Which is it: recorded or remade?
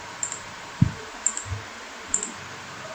remade